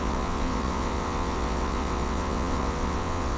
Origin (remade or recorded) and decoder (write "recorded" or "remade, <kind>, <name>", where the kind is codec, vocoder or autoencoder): remade, vocoder, WaveNeXt